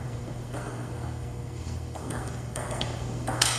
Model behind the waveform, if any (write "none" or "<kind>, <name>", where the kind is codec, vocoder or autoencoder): codec, SNAC